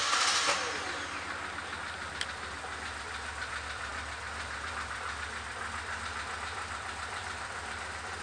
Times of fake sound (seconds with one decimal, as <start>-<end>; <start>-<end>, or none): none